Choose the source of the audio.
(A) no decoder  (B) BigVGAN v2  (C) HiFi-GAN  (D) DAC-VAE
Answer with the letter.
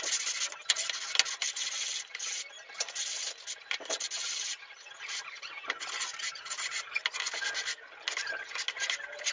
A